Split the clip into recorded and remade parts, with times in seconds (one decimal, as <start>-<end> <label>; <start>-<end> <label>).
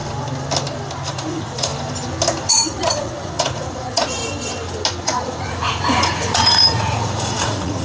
0.0-1.1 recorded; 1.1-1.7 remade; 1.7-2.5 recorded; 2.5-4.2 remade; 4.2-5.0 recorded; 5.0-7.8 remade